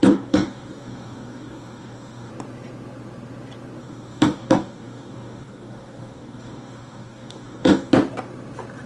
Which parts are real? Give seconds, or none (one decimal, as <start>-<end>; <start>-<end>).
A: 2.3-3.8; 7.9-8.9